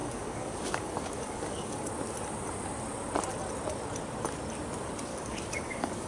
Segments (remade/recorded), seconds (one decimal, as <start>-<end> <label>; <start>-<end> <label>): 0.0-1.9 remade; 1.9-5.1 recorded; 5.1-6.1 remade